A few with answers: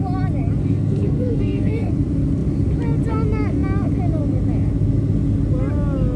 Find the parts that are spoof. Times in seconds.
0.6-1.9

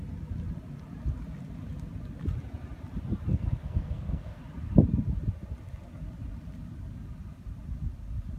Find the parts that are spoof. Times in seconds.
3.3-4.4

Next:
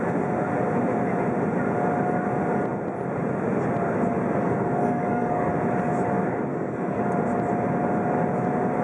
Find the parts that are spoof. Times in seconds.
4.4-5.5; 6.5-7.0

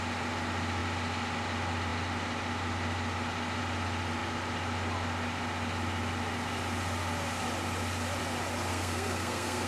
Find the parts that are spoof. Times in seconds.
8.7-9.7

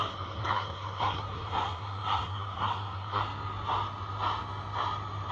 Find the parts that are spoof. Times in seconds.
0.0-3.2

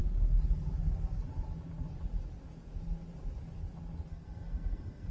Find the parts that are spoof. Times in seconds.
4.1-5.1

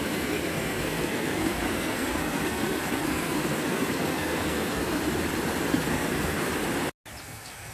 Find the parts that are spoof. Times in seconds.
0.0-5.0; 5.7-6.5; 7.2-7.7